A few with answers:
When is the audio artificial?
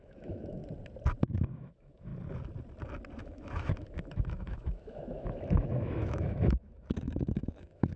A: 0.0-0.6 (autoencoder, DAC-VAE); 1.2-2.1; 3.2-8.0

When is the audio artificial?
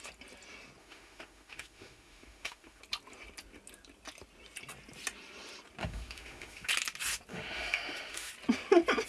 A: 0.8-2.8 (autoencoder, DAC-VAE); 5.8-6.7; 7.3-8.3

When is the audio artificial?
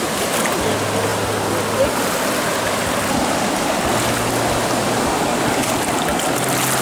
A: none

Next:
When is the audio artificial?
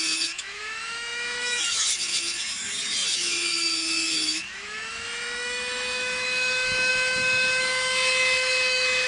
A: 0.0-9.1 (autoencoder, DAC-VAE)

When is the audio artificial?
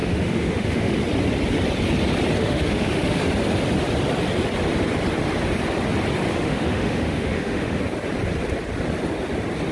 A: 0.0-1.0 (autoencoder, DAC-VAE); 2.4-3.2; 6.3-7.8